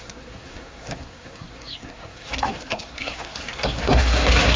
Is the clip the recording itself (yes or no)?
no